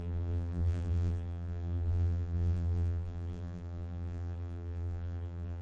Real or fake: fake